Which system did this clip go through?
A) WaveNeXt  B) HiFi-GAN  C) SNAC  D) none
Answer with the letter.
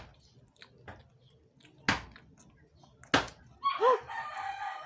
D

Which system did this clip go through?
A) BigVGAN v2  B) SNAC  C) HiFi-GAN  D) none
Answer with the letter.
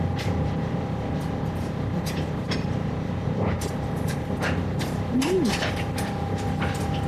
D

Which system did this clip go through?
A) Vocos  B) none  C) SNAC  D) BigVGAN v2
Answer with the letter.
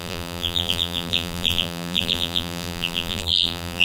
D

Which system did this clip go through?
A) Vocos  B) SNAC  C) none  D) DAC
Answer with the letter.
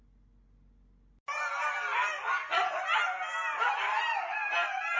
C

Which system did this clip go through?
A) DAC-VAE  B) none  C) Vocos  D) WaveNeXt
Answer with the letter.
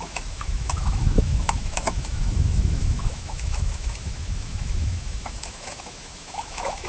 A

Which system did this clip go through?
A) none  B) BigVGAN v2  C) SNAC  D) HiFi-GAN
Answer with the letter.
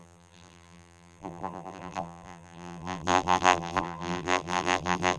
B